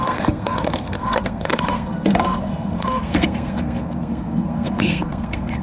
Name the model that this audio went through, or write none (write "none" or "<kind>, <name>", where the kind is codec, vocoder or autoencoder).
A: codec, SNAC